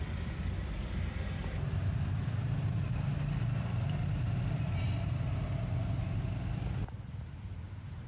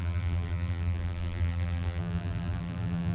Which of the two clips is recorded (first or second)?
first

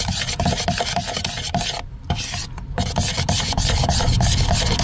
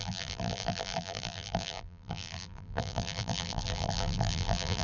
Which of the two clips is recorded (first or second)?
first